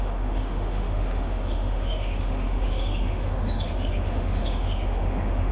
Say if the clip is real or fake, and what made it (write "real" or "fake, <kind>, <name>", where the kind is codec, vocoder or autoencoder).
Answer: fake, autoencoder, DAC-VAE